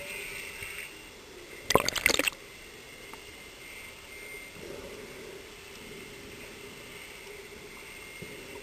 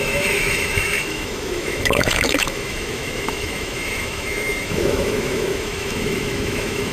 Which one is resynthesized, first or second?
second